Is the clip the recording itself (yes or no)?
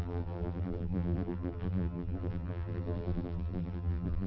no